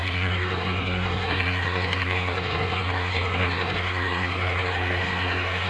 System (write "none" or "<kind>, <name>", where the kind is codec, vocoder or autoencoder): codec, SNAC